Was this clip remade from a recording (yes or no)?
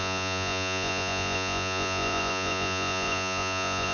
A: yes